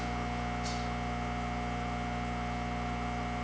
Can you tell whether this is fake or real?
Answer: real